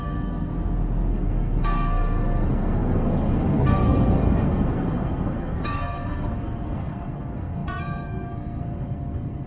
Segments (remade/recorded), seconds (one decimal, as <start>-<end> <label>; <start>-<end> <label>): 0.0-0.5 remade; 0.5-1.1 recorded; 1.1-9.5 remade